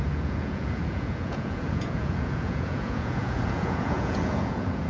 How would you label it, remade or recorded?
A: remade